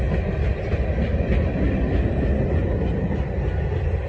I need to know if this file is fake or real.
real